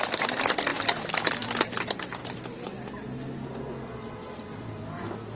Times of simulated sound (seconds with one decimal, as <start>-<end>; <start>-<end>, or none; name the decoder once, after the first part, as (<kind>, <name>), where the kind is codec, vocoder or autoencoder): 0.7-1.3 (vocoder, BigVGAN v2)